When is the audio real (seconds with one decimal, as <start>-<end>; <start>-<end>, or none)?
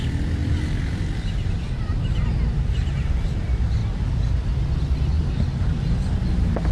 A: 0.0-6.7